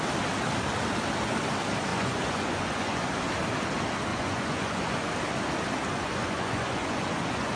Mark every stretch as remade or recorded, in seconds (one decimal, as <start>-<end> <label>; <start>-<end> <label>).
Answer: 0.0-1.9 recorded; 1.9-3.2 remade; 3.2-4.1 recorded; 4.1-5.1 remade; 5.1-5.9 recorded; 5.9-7.6 remade